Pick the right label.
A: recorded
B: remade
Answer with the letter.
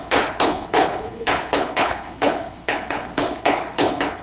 B